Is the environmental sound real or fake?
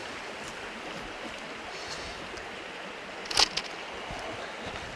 real